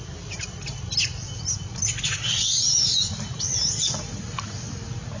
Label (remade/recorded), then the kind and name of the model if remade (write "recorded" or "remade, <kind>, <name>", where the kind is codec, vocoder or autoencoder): remade, vocoder, BigVGAN v2